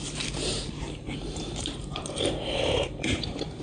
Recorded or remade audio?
remade